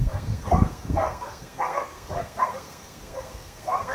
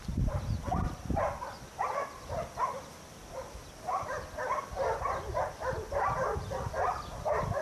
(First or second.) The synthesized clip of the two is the first